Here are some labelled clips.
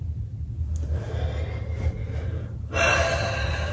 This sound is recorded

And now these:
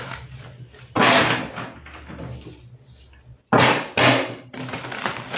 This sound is recorded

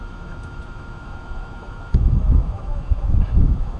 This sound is remade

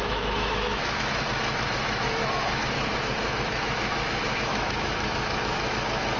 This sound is remade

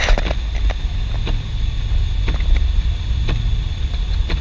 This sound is recorded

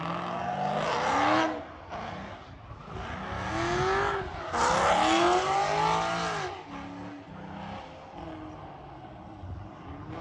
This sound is recorded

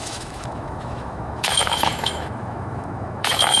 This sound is remade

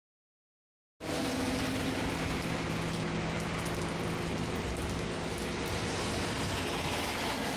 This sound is recorded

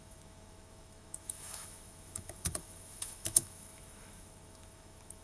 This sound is remade